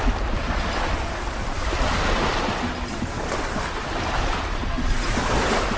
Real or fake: real